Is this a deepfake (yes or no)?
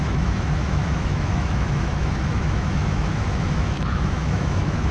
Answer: yes